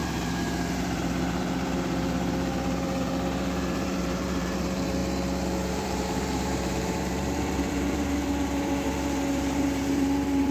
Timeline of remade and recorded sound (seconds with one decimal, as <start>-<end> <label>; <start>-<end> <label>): 0.0-5.0 remade; 5.0-5.7 recorded; 5.7-10.5 remade